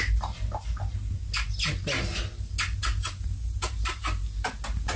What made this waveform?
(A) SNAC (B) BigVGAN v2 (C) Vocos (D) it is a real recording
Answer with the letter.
D